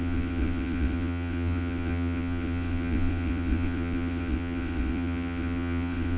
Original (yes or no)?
no